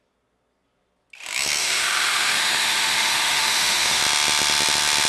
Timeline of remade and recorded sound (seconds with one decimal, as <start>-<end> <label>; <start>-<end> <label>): 0.0-1.6 recorded; 1.6-4.0 remade; 4.0-5.1 recorded